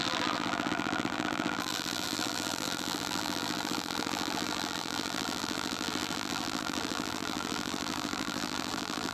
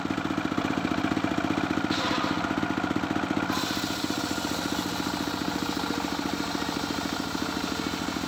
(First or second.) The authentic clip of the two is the second